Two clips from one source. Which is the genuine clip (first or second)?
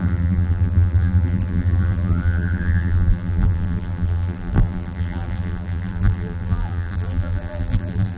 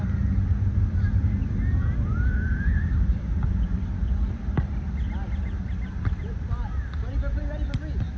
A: second